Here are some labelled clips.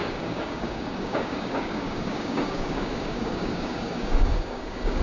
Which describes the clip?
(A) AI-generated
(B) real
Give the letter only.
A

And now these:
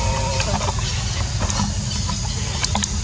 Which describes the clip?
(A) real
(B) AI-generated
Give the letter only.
A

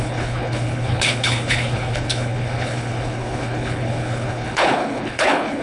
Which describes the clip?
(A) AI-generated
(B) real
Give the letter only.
A